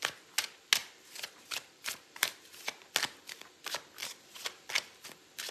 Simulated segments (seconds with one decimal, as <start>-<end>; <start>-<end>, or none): 0.8-2.9; 4.0-4.7